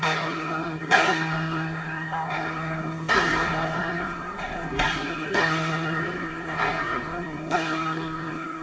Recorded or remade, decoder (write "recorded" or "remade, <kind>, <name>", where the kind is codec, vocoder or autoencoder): remade, codec, SNAC